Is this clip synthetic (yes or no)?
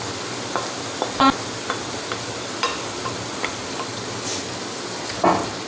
no